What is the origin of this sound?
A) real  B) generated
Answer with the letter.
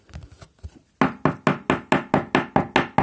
A